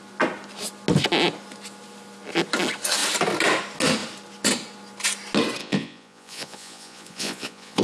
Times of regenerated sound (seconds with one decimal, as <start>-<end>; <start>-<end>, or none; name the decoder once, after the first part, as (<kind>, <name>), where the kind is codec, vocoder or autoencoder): 5.6-7.8 (vocoder, Vocos)